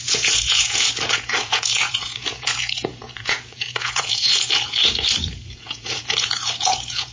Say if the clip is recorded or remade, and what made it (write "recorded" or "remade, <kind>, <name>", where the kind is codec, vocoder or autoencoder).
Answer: remade, vocoder, Vocos